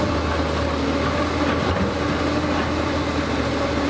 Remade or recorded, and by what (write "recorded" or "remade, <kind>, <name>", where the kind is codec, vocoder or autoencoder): recorded